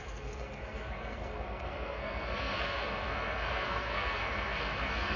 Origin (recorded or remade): remade